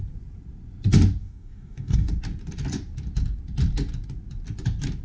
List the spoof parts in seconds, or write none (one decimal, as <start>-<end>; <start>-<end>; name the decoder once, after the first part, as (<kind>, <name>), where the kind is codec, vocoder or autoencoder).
1.2-2.1 (codec, DAC)

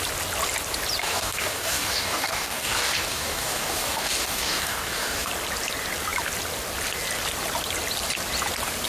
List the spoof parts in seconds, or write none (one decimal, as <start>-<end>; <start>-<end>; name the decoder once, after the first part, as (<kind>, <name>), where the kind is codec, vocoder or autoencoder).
1.0-5.3 (codec, DAC)

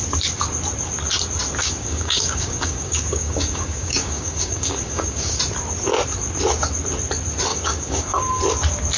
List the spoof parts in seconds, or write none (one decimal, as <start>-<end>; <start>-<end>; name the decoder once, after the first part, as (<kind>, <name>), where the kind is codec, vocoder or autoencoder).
1.6-5.4 (codec, DAC); 7.5-8.4

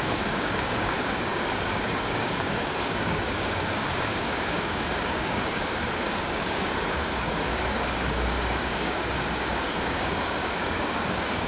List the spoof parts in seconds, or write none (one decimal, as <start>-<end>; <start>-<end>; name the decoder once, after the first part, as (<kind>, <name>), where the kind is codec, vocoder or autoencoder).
0.0-11.5 (codec, DAC)

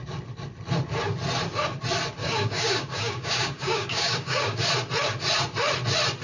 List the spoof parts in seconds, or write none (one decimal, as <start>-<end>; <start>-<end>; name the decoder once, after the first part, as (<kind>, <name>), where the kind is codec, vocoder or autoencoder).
2.2-4.7 (codec, DAC)

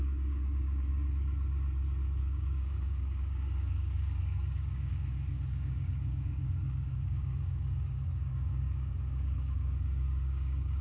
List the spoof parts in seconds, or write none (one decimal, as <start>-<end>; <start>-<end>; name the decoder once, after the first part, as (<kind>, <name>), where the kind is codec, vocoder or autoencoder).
0.0-0.9 (codec, DAC); 2.2-10.8